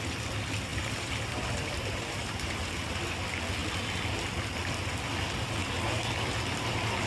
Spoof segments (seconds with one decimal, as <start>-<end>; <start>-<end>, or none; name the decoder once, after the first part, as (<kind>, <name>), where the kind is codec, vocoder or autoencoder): 0.7-2.9 (vocoder, BigVGAN v2)